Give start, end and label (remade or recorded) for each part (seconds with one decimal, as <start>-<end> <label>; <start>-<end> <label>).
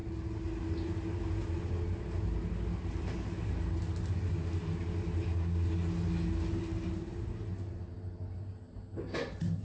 0.0-9.6 recorded